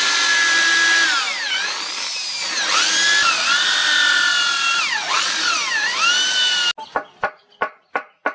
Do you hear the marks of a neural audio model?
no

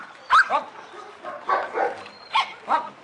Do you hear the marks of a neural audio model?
no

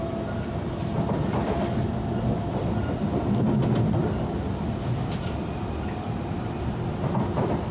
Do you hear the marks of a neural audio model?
no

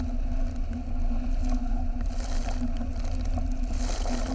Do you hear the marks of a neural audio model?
no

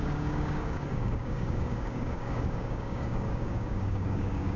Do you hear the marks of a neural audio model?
yes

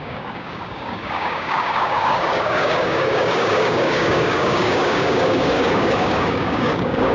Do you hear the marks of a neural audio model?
yes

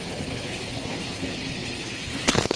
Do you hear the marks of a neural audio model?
yes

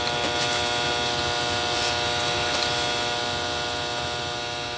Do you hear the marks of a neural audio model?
no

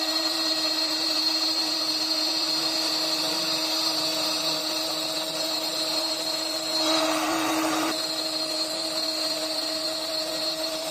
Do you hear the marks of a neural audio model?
yes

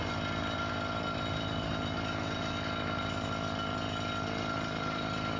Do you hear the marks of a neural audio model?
no